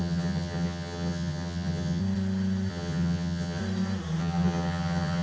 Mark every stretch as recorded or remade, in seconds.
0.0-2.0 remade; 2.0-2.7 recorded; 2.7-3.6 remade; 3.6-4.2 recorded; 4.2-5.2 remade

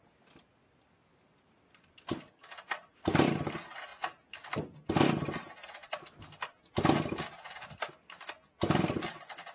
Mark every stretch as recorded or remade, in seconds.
0.0-9.5 recorded

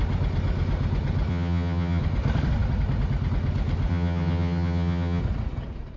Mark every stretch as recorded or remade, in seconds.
0.0-1.3 recorded; 1.3-2.0 remade; 2.0-3.9 recorded; 3.9-5.2 remade; 5.2-6.0 recorded

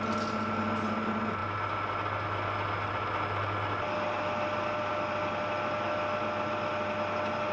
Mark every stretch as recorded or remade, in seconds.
0.0-7.5 recorded